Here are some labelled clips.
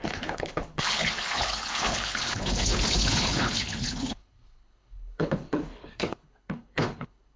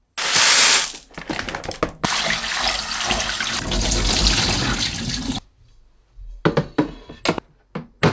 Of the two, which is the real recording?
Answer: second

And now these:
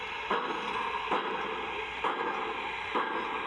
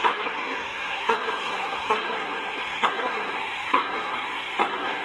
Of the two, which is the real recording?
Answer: first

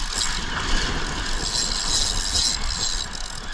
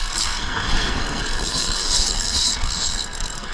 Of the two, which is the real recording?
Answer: first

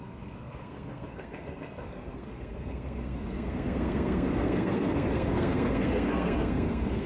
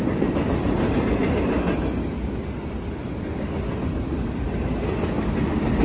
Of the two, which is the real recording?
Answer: second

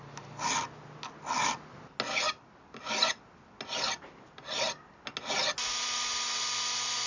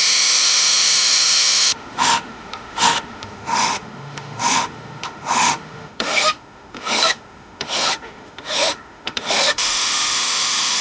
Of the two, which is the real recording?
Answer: first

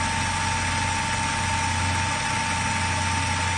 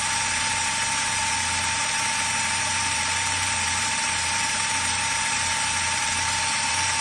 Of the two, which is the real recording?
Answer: first